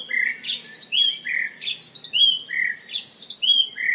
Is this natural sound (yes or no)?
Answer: yes